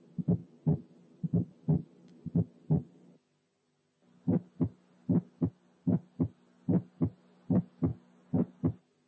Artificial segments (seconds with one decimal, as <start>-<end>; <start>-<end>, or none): none